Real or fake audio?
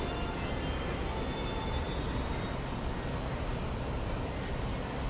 real